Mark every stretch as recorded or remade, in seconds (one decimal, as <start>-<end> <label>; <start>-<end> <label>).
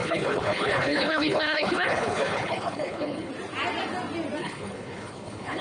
0.0-3.3 remade; 3.3-4.4 recorded; 4.4-5.6 remade